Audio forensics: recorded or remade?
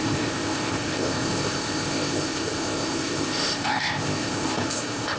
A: remade